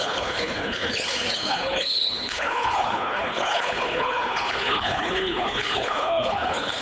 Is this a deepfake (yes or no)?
yes